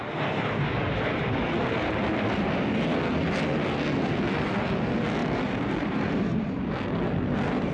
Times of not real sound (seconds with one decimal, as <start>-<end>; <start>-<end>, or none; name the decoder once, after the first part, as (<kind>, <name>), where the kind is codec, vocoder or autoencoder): 5.2-6.7 (vocoder, BigVGAN v2)